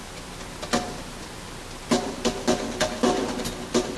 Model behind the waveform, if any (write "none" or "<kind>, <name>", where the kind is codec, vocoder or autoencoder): none